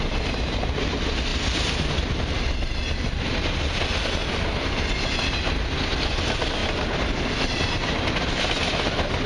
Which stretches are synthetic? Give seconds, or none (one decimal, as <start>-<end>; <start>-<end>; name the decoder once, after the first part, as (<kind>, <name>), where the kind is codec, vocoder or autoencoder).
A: none